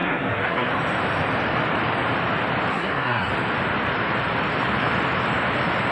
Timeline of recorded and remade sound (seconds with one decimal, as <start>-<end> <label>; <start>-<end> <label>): 0.0-0.7 remade; 0.7-2.7 recorded; 2.7-3.3 remade; 3.3-5.9 recorded